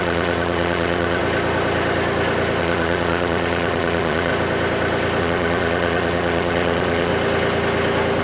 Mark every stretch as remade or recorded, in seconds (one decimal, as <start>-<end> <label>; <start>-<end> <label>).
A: 0.0-1.2 remade; 1.2-2.6 recorded; 2.6-4.3 remade; 4.3-5.2 recorded; 5.2-7.1 remade; 7.1-8.2 recorded